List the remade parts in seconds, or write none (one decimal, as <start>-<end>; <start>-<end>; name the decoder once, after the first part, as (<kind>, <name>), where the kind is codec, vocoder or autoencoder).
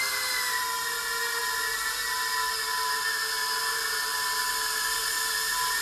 none